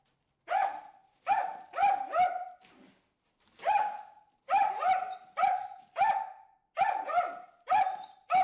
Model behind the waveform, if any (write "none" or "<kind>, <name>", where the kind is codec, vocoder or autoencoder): vocoder, BigVGAN v2